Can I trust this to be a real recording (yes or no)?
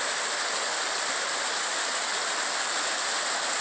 yes